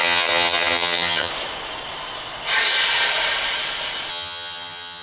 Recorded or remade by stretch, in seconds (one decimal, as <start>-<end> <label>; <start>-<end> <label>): 0.0-1.3 remade; 1.3-4.1 recorded; 4.1-5.0 remade